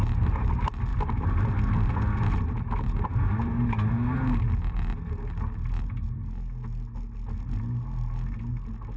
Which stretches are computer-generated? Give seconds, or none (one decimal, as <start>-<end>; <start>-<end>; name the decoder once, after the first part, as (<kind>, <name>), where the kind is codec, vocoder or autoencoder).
0.9-1.6 (vocoder, BigVGAN v2)